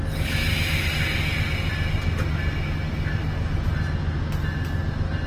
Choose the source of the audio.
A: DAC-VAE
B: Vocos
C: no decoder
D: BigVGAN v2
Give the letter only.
C